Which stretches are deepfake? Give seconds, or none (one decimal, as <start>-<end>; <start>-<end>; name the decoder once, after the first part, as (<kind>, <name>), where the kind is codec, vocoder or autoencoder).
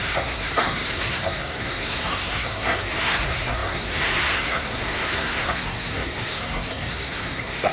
0.0-7.7 (codec, SNAC)